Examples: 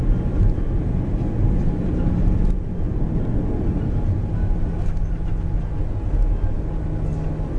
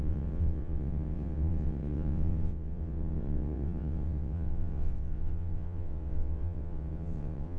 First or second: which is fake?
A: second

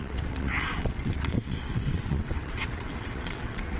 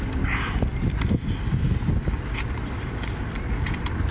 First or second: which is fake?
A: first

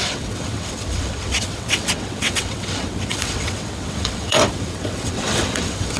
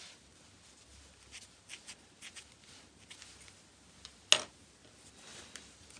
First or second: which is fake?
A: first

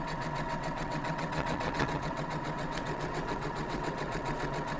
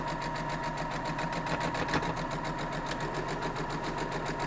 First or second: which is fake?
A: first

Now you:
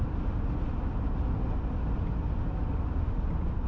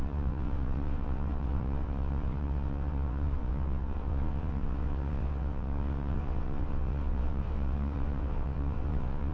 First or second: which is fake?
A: second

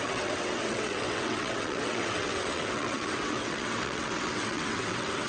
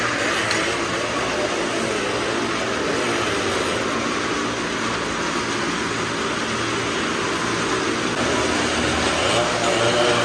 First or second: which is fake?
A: first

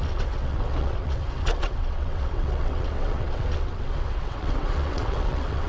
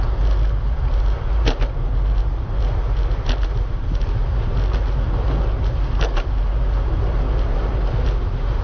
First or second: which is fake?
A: first